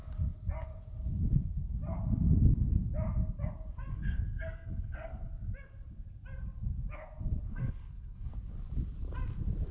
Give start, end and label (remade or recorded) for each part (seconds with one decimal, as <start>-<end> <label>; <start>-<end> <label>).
0.0-3.9 recorded; 3.9-5.3 remade; 5.3-7.5 recorded; 7.5-8.3 remade; 8.3-9.7 recorded